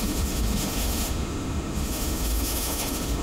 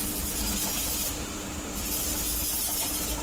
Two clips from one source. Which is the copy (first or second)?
first